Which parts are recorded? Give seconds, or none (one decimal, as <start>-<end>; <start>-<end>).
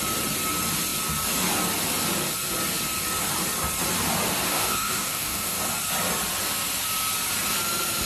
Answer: 0.0-4.5; 5.6-8.1